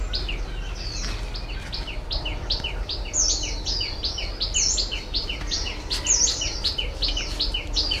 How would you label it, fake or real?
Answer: real